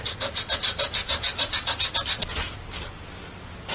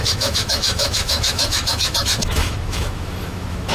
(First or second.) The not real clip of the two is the second